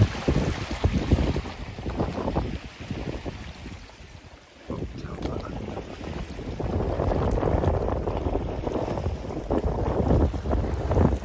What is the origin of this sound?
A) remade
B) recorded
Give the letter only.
B